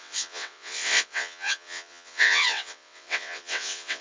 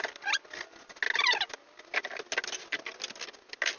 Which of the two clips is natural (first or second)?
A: second